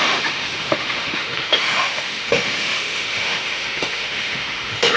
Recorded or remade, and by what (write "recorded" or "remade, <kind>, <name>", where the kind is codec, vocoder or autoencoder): remade, autoencoder, DAC-VAE